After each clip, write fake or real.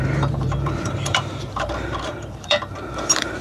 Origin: fake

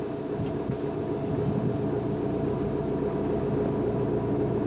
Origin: real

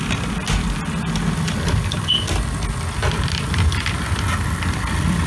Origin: real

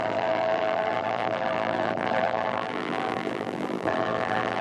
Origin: fake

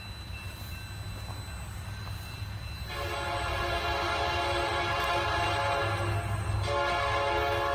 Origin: real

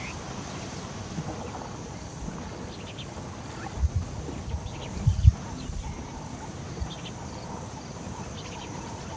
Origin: real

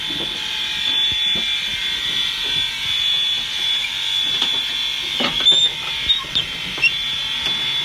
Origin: real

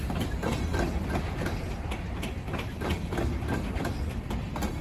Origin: real